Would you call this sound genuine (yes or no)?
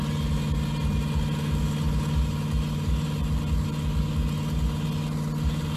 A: yes